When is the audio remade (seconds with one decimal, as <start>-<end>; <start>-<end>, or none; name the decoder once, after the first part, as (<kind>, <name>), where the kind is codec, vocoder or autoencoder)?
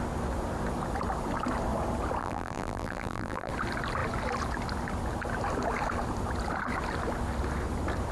2.2-3.5 (vocoder, BigVGAN v2)